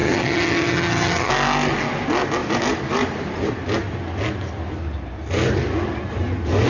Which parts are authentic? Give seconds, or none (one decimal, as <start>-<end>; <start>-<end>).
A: 1.3-6.7